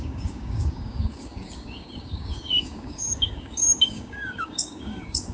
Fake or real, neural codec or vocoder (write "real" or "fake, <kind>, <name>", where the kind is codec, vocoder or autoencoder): fake, codec, DAC